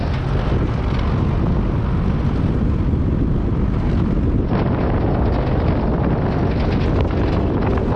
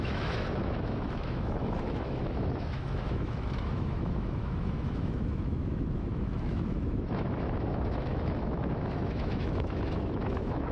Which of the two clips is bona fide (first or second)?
first